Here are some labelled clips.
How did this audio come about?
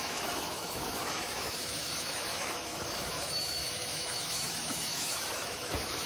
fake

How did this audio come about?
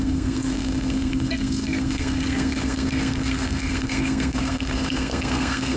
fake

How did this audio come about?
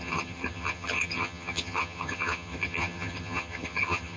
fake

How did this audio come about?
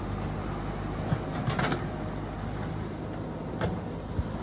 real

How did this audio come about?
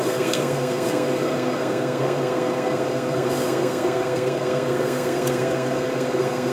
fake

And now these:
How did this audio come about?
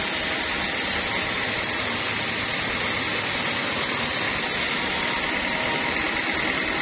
real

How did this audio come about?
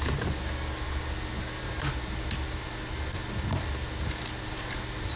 real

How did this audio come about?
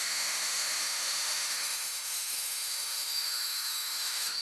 fake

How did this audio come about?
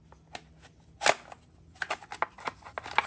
real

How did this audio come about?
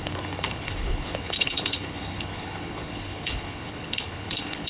fake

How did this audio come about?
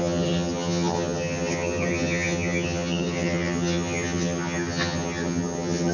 fake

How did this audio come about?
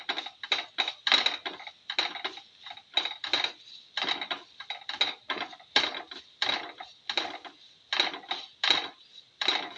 real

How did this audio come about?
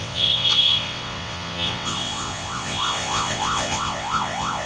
fake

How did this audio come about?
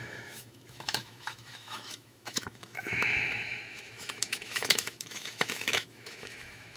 fake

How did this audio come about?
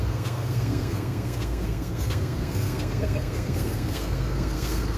fake